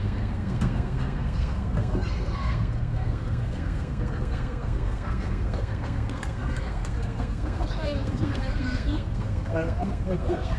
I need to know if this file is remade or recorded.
remade